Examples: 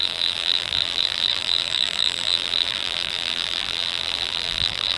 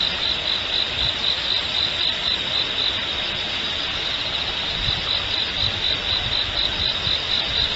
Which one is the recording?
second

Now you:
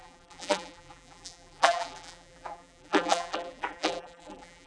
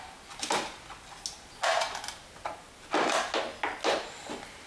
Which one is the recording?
second